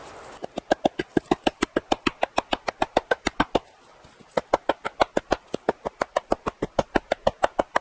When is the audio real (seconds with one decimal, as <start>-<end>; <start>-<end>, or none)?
0.0-7.8